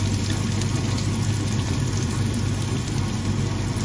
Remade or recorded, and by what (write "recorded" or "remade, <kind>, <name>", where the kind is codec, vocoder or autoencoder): remade, vocoder, BigVGAN v2